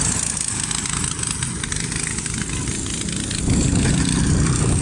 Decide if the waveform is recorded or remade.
recorded